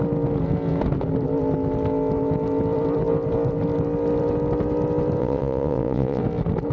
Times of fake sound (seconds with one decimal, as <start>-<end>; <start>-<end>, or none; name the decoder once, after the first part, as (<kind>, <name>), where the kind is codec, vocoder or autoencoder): 5.2-6.2 (vocoder, WaveNeXt)